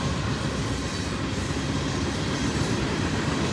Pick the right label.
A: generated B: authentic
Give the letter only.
B